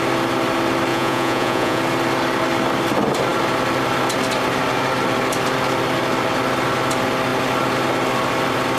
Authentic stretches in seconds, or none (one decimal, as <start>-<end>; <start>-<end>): 0.0-0.9; 1.8-8.8